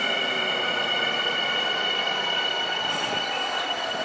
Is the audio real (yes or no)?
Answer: yes